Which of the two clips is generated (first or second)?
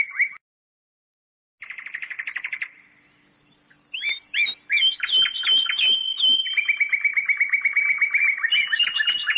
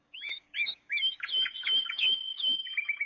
second